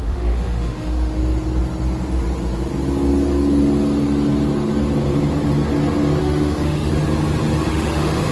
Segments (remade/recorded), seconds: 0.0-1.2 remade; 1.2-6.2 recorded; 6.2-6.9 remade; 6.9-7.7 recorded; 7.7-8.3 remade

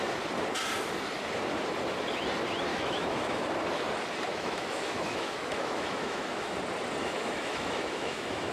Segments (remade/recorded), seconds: 0.0-2.7 recorded; 2.7-3.5 remade; 3.5-4.3 recorded; 4.3-6.5 remade; 6.5-7.0 recorded; 7.0-8.5 remade

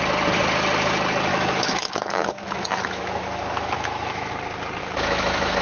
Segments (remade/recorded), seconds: 0.0-1.3 recorded; 1.3-4.3 remade; 4.3-4.8 recorded; 4.8-5.6 remade